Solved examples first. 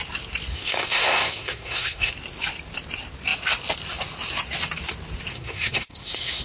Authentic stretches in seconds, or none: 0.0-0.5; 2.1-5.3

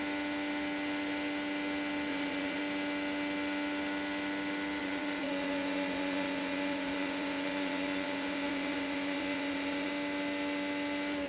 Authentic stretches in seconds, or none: 0.0-2.1; 2.6-4.8; 9.9-11.3

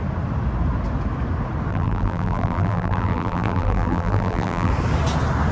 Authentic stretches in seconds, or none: 0.0-1.7; 4.7-5.5

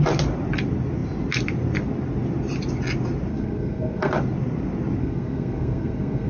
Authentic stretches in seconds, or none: 0.0-3.3; 4.1-5.0